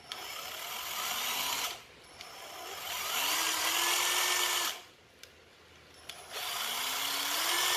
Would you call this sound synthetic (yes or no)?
no